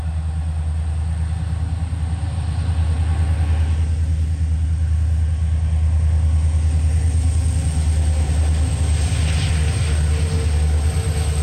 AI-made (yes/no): no